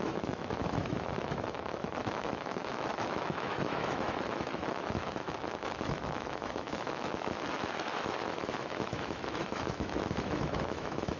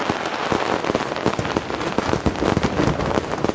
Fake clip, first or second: first